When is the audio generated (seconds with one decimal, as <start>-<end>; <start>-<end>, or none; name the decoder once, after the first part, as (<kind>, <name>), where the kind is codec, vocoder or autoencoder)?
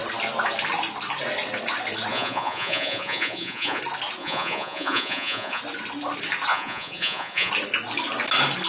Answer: 2.1-3.8 (vocoder, Vocos); 4.2-5.6; 6.5-7.5